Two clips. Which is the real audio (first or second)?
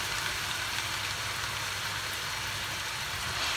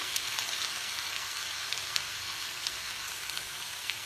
first